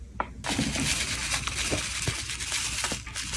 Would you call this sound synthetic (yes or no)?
no